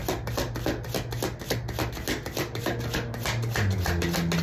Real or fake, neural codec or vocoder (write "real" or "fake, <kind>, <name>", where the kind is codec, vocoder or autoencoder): real